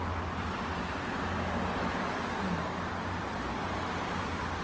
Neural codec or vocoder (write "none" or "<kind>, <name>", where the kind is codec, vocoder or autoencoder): none